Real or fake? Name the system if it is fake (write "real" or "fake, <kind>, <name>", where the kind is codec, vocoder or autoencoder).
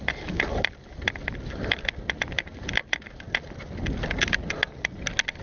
real